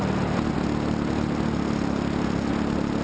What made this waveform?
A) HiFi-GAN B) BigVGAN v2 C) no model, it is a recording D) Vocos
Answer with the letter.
C